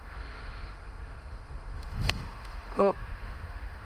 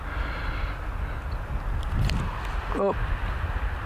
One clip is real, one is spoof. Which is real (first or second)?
second